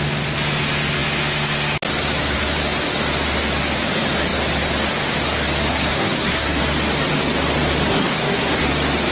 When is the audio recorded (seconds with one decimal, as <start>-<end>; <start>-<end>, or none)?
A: 0.0-5.7; 6.6-7.9; 8.6-9.1